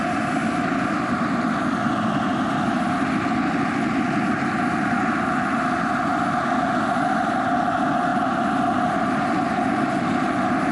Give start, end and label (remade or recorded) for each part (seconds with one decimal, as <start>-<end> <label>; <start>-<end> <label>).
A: 0.0-10.7 recorded

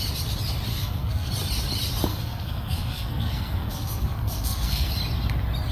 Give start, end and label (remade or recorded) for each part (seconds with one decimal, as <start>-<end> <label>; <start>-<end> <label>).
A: 0.0-0.7 recorded; 0.7-1.3 remade; 1.3-2.1 recorded; 2.1-4.9 remade; 4.9-5.7 recorded

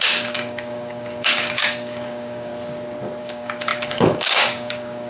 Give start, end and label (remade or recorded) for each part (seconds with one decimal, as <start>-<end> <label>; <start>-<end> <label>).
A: 0.0-2.5 remade; 2.5-3.2 recorded; 3.2-5.1 remade

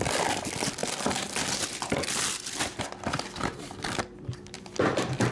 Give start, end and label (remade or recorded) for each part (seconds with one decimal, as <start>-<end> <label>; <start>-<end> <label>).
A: 0.0-5.3 remade

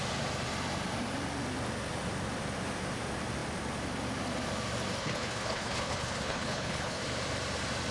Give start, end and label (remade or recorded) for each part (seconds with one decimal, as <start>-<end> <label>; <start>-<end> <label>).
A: 0.0-5.0 recorded; 5.0-7.0 remade; 7.0-7.9 recorded

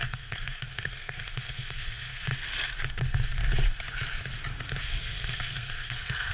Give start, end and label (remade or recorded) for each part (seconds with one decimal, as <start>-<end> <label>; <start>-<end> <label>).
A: 0.0-2.3 remade; 2.3-3.0 recorded; 3.0-3.4 remade; 3.4-5.0 recorded; 5.0-6.3 remade

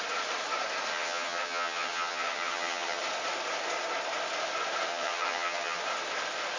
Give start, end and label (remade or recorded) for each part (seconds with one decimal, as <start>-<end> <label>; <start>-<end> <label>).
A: 0.0-0.9 recorded; 0.9-3.0 remade; 3.0-4.9 recorded; 4.9-5.8 remade; 5.8-6.6 recorded

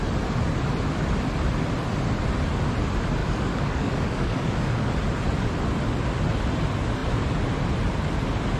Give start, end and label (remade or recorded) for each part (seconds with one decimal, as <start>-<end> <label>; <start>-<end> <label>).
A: 0.0-3.2 recorded; 3.2-4.9 remade; 4.9-8.6 recorded